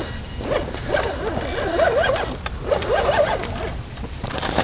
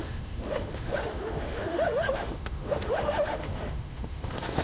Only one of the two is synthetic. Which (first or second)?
second